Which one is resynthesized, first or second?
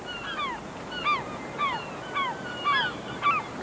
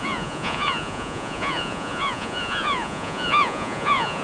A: second